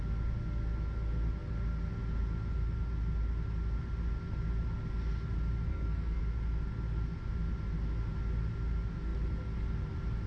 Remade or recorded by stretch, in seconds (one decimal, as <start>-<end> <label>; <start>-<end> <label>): 0.0-5.7 recorded; 5.7-6.2 remade; 6.2-10.3 recorded